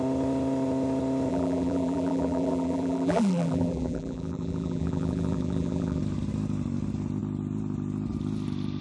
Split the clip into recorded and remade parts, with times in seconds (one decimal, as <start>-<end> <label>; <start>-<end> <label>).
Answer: 0.0-1.3 recorded; 1.3-6.0 remade; 6.0-8.8 recorded